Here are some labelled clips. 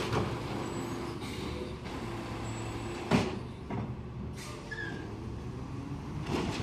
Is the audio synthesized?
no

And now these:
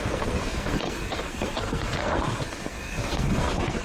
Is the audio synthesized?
yes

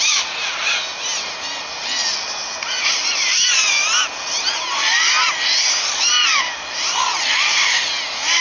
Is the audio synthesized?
no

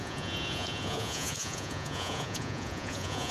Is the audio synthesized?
yes